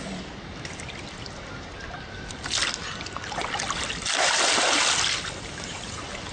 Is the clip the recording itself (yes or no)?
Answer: yes